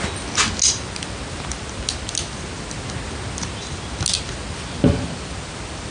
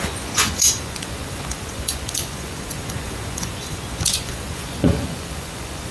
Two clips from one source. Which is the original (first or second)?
first